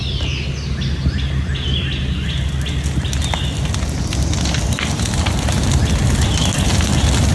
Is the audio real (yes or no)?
yes